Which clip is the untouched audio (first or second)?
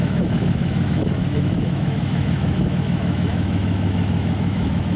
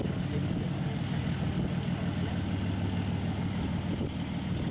second